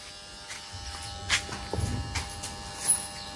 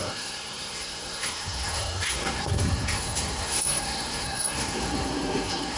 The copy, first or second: second